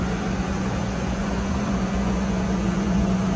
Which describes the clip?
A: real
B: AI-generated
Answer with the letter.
B